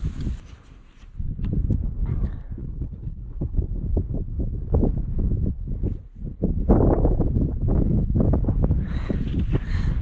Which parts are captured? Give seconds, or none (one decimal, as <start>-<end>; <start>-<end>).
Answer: 0.0-2.6; 3.6-10.0